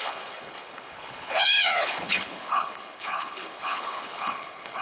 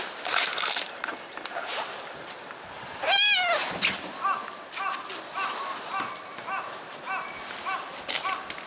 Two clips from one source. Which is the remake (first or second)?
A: first